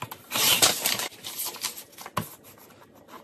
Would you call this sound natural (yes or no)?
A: yes